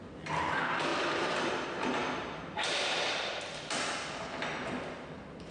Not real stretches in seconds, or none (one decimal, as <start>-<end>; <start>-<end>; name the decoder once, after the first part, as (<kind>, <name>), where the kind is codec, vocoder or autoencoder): none